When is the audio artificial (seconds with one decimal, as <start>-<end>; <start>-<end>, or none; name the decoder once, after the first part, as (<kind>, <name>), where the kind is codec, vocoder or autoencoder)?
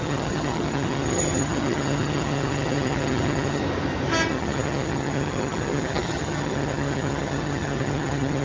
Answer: 0.0-3.6 (vocoder, HiFi-GAN); 4.3-8.4